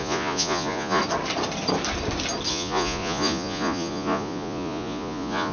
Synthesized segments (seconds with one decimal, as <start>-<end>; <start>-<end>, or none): 0.0-1.0; 2.5-5.5